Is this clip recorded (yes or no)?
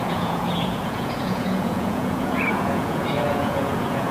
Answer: no